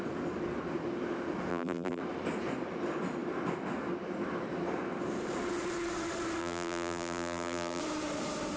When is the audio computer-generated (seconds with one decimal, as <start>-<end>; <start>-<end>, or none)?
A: 1.5-2.0; 6.4-7.8